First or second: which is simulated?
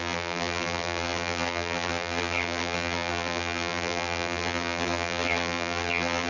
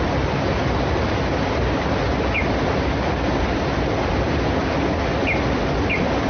first